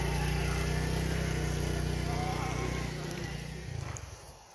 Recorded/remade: recorded